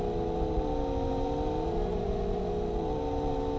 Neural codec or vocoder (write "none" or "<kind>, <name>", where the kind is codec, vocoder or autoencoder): none